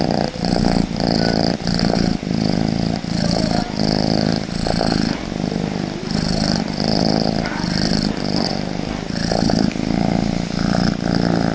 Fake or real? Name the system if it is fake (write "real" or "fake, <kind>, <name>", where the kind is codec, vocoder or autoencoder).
real